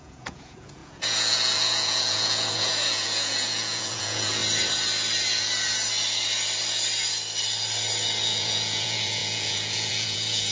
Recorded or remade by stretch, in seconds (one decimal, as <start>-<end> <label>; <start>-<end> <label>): 0.0-4.4 remade; 4.4-8.3 recorded; 8.3-10.5 remade